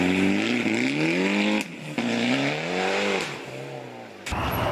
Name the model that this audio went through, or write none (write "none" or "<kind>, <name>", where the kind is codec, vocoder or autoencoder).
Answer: none